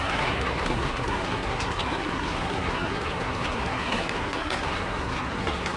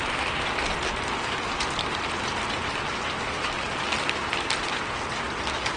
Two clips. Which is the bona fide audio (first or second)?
second